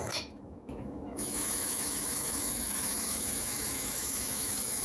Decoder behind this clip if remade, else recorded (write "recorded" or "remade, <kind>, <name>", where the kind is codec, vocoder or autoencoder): remade, autoencoder, DAC-VAE